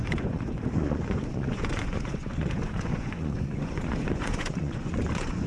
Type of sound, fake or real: fake